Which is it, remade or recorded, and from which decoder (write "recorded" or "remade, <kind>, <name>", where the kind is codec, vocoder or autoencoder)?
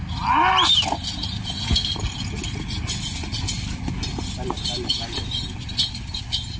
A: recorded